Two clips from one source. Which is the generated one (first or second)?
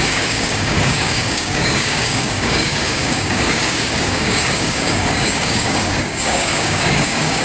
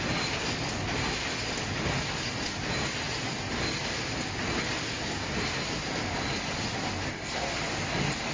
first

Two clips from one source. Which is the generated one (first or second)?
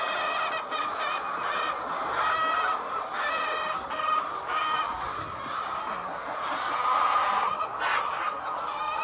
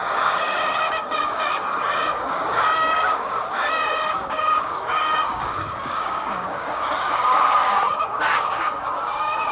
second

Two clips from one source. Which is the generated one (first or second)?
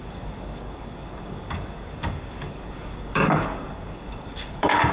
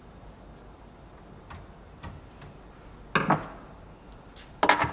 first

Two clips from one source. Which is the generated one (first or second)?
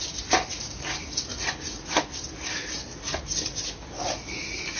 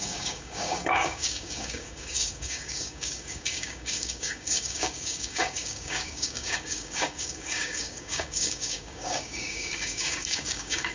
second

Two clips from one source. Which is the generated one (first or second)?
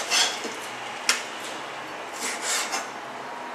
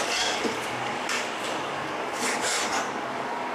second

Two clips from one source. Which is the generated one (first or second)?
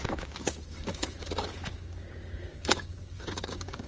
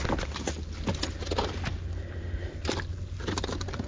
first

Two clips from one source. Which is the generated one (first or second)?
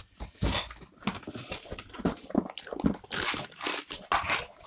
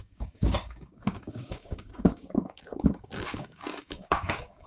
second